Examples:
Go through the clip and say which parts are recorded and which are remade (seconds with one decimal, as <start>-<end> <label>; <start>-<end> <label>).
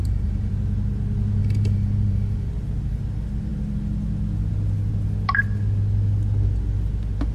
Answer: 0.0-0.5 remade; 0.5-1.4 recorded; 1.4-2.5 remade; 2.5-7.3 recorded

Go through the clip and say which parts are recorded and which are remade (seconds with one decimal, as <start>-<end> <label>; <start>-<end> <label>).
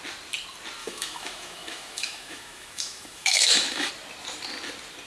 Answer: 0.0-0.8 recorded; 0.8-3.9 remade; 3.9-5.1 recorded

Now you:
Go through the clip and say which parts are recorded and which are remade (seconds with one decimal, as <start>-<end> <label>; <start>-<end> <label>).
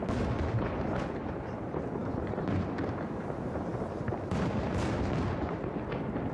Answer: 0.0-3.7 remade; 3.7-6.3 recorded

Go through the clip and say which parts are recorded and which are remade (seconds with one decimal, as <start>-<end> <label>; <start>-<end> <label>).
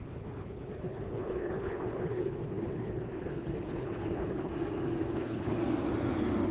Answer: 0.0-4.5 remade; 4.5-5.1 recorded; 5.1-5.6 remade; 5.6-6.5 recorded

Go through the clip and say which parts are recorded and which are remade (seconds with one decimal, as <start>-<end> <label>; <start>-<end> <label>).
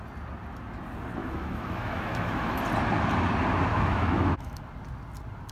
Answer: 0.0-1.2 recorded; 1.2-2.6 remade; 2.6-3.7 recorded; 3.7-4.6 remade; 4.6-5.5 recorded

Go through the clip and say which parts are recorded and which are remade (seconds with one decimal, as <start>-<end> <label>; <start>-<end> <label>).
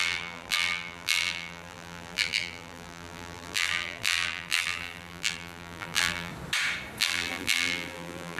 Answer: 0.0-6.3 remade; 6.3-7.0 recorded; 7.0-8.4 remade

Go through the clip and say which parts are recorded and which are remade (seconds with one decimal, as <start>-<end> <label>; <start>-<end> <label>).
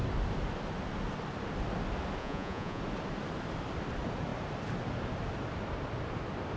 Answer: 0.0-2.2 recorded; 2.2-2.8 remade; 2.8-6.6 recorded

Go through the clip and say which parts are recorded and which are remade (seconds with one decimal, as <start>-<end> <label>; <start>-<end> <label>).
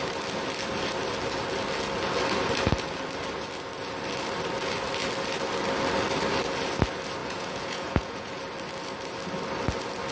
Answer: 0.0-7.2 recorded; 7.2-8.4 remade; 8.4-10.1 recorded